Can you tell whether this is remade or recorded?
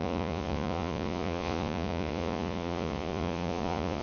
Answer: remade